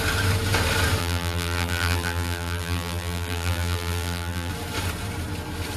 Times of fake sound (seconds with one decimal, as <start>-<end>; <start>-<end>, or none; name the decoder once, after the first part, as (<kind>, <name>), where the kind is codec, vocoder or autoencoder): 1.0-4.5 (vocoder, BigVGAN v2)